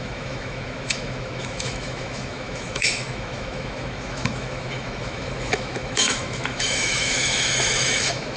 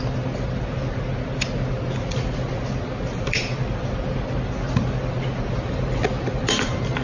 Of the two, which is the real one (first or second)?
second